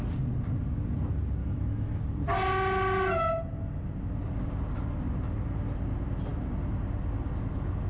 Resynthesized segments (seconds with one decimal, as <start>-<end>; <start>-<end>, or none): 1.4-2.0